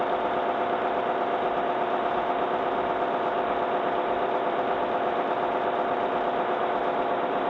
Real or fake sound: fake